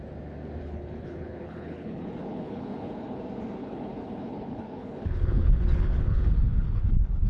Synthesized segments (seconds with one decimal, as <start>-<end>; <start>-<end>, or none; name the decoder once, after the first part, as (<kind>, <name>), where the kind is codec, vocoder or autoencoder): 0.6-3.2 (codec, HILCodec); 3.6-7.3